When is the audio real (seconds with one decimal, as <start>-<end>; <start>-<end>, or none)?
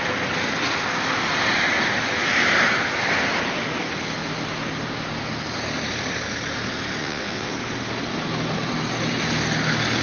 0.0-7.0; 7.5-10.0